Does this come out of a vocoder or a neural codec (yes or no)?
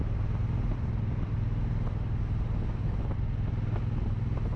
no